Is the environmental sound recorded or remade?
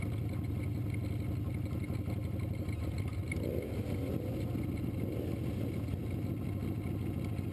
recorded